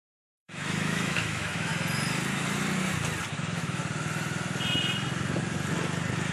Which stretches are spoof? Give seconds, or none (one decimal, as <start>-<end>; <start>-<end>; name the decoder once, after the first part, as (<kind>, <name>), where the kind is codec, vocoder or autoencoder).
0.0-1.7 (autoencoder, DAC-VAE); 3.4-3.8